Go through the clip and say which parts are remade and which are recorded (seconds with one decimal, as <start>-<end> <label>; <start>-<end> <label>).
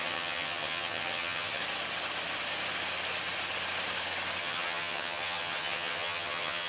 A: 0.0-1.6 remade; 1.6-4.4 recorded; 4.4-6.7 remade